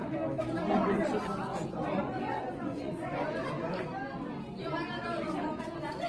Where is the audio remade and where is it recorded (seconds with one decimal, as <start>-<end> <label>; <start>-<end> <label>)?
0.0-1.5 recorded; 1.5-3.3 remade; 3.3-6.1 recorded